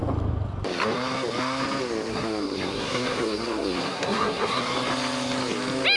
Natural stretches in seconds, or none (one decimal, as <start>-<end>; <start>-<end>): 0.0-2.1; 4.6-6.0